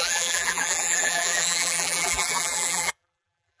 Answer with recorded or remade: remade